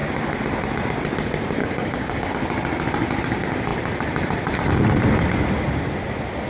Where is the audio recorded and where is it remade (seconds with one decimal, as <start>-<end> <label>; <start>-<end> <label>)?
0.0-1.6 recorded; 1.6-2.3 remade; 2.3-6.5 recorded